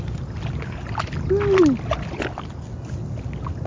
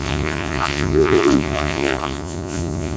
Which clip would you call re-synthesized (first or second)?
second